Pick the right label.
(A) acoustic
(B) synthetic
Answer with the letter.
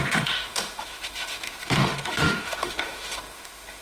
B